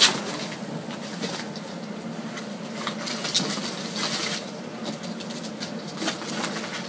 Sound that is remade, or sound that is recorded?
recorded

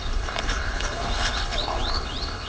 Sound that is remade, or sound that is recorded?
remade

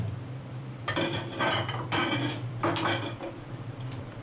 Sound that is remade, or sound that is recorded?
remade